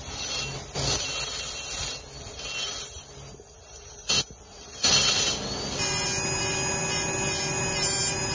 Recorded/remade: recorded